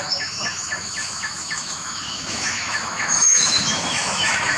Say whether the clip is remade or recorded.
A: remade